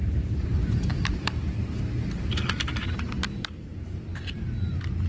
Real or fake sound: fake